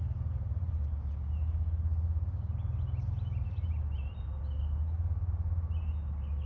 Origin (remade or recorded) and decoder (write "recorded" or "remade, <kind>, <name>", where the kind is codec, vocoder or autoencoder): recorded